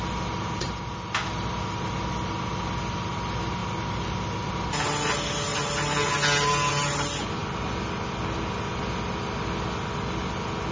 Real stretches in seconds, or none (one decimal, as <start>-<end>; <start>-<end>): 0.0-10.7